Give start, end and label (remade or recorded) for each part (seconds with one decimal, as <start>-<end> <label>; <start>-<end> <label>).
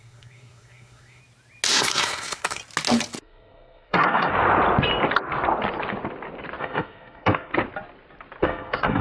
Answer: 0.0-1.2 remade; 1.2-1.7 recorded; 1.7-2.6 remade; 2.6-3.2 recorded; 3.2-4.3 remade; 4.3-6.6 recorded; 6.6-7.5 remade; 7.5-8.4 recorded; 8.4-9.0 remade